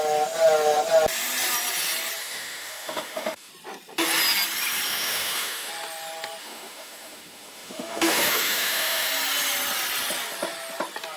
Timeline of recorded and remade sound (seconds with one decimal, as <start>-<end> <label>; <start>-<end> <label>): 0.0-2.2 recorded; 2.2-3.5 remade; 3.5-4.9 recorded; 4.9-5.7 remade; 5.7-6.4 recorded; 6.4-9.1 remade; 9.1-11.2 recorded